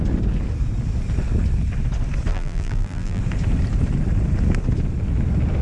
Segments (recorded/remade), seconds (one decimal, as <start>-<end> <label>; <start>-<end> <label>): 0.0-2.3 recorded; 2.3-3.2 remade; 3.2-5.6 recorded